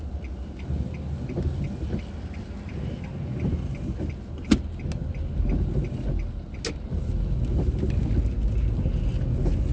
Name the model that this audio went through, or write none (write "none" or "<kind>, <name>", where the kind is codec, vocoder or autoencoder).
none